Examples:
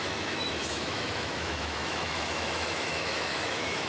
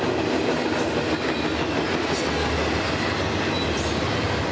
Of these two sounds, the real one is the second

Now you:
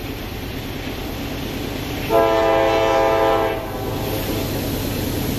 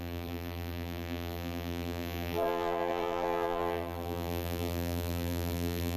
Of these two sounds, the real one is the first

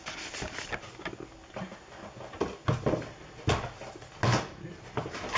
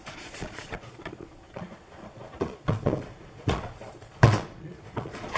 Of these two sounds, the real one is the first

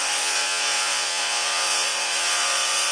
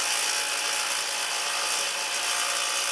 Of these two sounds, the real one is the second